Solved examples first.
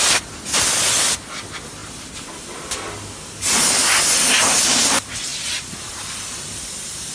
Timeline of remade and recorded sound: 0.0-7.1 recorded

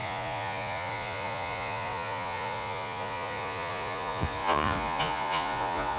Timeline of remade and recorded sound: 0.0-6.0 remade

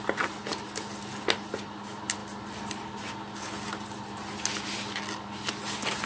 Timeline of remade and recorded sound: 0.0-6.1 recorded

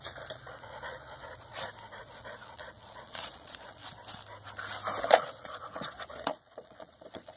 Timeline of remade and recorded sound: 0.0-1.5 remade; 1.5-2.0 recorded; 2.0-3.8 remade; 3.8-5.0 recorded; 5.0-7.4 remade

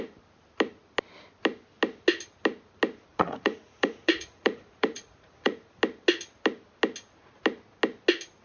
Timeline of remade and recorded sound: 0.0-3.1 recorded; 3.1-5.7 remade; 5.7-8.4 recorded